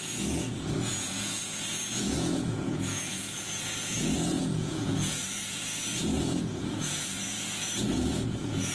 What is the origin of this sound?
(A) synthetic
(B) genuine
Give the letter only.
A